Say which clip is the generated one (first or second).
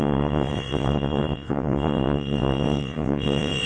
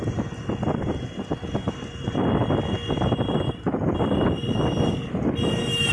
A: first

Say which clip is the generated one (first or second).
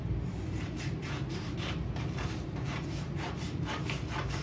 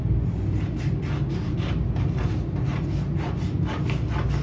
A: first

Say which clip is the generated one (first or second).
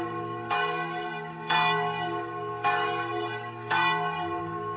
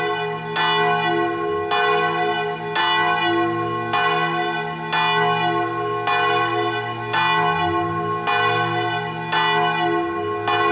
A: first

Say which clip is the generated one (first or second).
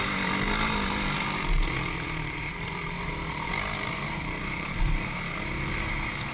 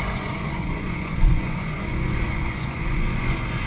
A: second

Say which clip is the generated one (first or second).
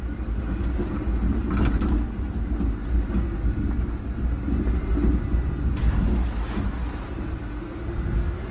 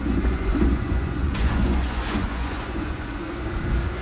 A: second